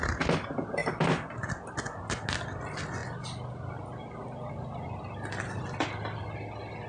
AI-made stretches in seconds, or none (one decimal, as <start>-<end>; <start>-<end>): none